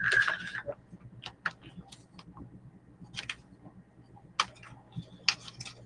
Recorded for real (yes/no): yes